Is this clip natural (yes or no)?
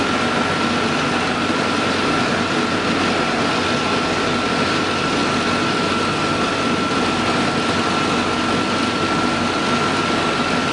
yes